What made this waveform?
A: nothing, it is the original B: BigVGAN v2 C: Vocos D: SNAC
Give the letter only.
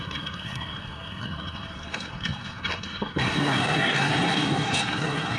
D